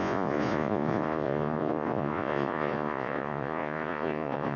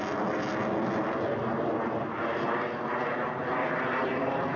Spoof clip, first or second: first